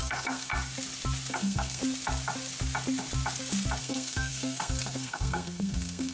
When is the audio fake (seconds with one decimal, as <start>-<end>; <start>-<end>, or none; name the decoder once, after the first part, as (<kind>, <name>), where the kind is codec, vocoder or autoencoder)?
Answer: 0.0-0.5 (codec, SNAC); 1.3-1.8; 3.8-6.1